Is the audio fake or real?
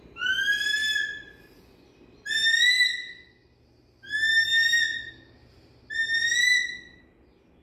real